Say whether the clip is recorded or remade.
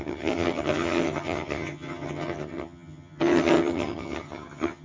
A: remade